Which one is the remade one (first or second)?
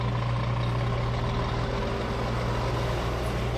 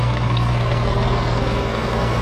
second